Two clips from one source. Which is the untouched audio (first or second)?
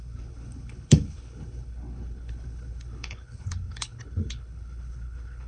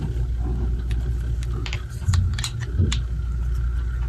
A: second